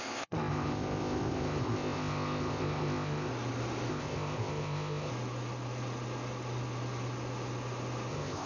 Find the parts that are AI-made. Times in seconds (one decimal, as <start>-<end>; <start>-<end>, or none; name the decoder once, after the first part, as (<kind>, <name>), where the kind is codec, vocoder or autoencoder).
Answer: 0.0-3.3 (codec, ZipCodec); 3.9-5.1; 8.1-8.5